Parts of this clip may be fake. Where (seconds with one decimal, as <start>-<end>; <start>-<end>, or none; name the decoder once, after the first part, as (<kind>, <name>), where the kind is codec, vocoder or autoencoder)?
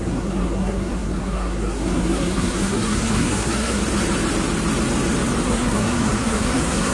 0.0-3.8 (codec, SNAC); 5.4-6.9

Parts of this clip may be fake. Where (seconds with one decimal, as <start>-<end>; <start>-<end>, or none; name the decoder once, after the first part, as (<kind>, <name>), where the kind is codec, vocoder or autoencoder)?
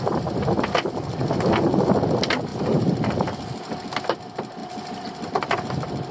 none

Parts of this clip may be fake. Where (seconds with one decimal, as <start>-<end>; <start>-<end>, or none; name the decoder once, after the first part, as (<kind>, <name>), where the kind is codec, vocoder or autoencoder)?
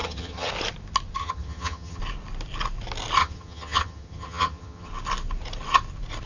0.0-0.5 (vocoder, HiFi-GAN); 1.2-2.0; 3.2-4.9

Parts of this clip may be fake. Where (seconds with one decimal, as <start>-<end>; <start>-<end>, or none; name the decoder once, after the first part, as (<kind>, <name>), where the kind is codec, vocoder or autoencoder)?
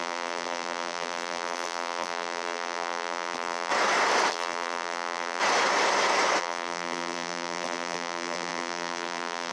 0.0-3.7 (vocoder, BigVGAN v2); 4.3-5.4; 6.4-9.5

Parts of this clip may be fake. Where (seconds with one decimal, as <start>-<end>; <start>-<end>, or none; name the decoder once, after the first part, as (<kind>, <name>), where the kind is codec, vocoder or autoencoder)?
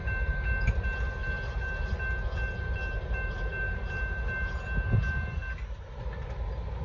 none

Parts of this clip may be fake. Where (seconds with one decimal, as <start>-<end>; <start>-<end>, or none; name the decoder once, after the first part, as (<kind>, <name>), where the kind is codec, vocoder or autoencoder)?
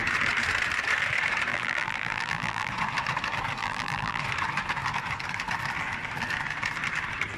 1.5-2.7 (vocoder, BigVGAN v2); 3.6-4.2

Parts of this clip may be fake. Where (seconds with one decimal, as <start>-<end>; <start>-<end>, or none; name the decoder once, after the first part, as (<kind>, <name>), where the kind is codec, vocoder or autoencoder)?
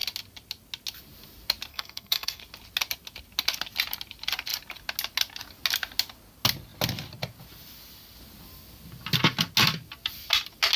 1.7-2.4 (codec, SNAC)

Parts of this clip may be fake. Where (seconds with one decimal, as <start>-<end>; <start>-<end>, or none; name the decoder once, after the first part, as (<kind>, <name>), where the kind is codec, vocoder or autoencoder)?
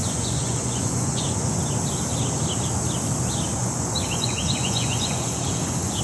0.0-1.6 (vocoder, Vocos); 3.6-6.0